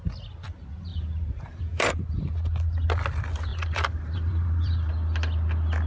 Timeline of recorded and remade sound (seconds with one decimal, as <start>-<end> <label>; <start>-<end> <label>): 0.0-0.9 recorded; 0.9-1.9 remade; 1.9-3.5 recorded; 3.5-4.9 remade; 4.9-5.9 recorded